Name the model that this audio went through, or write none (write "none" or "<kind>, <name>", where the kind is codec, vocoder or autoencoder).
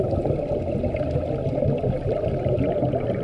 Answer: none